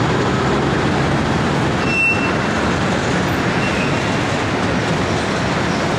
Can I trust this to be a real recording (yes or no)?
yes